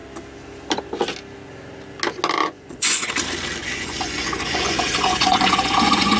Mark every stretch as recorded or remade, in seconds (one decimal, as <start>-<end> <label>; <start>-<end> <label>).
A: 0.0-2.4 recorded; 2.4-3.1 remade; 3.1-3.6 recorded; 3.6-6.2 remade